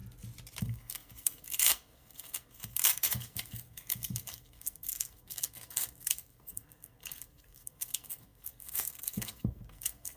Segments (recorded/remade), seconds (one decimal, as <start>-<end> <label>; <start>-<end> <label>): 0.0-0.6 recorded; 0.6-10.2 remade